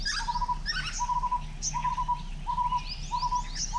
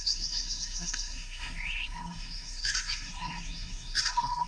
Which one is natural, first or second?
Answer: first